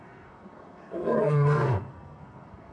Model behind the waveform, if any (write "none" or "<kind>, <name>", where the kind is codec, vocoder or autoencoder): codec, SNAC